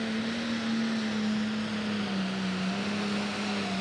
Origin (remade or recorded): recorded